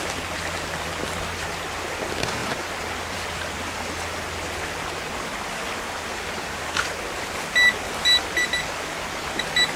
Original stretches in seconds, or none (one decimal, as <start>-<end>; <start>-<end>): 0.0-9.8